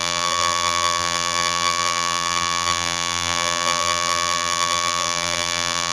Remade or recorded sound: remade